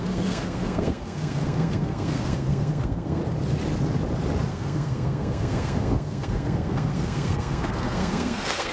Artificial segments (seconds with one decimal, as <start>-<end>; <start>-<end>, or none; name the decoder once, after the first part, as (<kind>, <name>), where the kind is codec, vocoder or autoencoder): 0.0-3.2 (codec, SNAC); 4.5-8.7